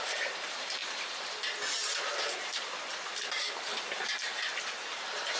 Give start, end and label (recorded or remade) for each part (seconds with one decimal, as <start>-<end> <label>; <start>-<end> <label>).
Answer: 0.0-5.4 remade